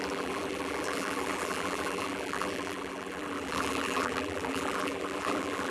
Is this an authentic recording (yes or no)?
no